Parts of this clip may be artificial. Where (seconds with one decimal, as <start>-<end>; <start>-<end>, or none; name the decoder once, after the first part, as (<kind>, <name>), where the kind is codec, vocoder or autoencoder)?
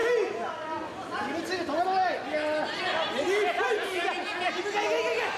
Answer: none